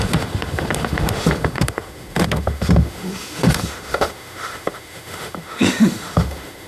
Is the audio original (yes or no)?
no